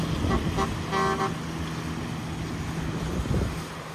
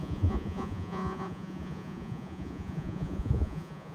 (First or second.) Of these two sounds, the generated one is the second